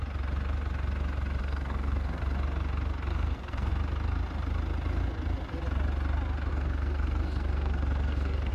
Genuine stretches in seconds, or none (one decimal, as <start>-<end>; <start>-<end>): 0.0-1.4; 2.2-3.1; 3.7-6.5